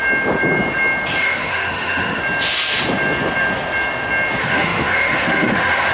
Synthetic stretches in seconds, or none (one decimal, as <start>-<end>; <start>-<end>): 1.2-2.2; 4.4-5.9